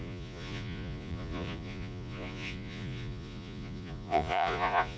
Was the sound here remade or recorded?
remade